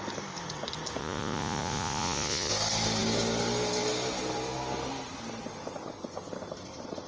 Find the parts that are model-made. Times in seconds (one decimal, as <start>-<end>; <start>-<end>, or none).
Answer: 1.0-2.5